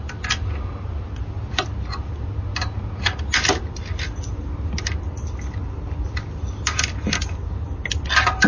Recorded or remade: recorded